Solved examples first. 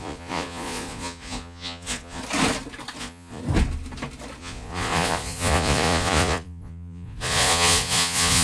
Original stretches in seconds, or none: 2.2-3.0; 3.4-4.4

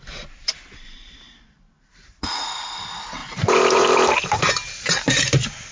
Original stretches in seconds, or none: 0.0-3.2; 4.5-5.7

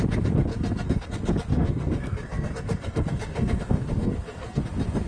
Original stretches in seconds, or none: 0.0-0.5; 1.1-1.5; 4.6-5.1